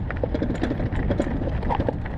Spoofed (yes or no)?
no